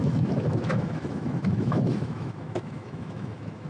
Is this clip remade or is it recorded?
remade